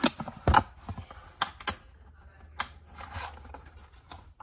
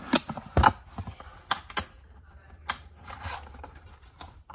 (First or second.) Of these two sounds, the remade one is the second